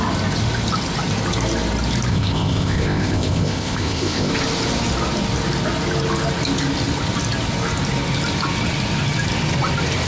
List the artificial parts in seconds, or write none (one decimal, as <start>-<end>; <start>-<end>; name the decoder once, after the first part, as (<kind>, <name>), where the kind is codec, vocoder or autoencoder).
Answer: 2.1-4.3 (codec, ZipCodec)